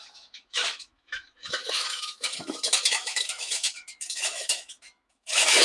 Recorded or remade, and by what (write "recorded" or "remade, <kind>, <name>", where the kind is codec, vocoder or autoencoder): remade, autoencoder, DAC-VAE